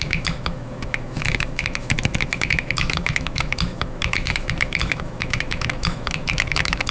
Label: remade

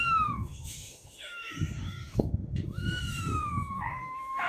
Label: remade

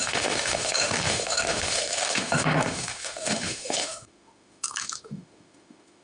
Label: remade